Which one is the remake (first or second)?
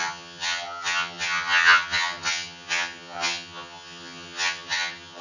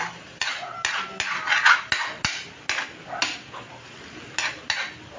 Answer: first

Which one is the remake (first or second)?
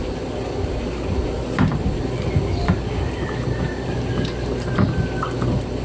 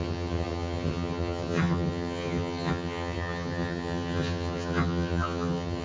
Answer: second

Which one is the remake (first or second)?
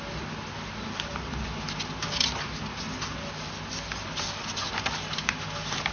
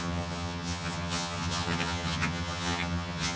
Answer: second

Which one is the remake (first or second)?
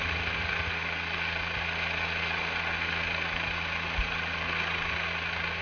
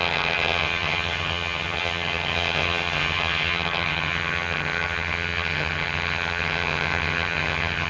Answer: second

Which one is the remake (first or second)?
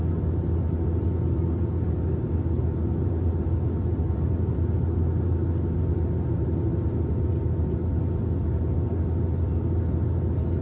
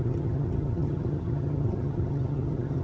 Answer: second